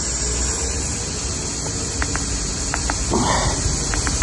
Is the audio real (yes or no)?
yes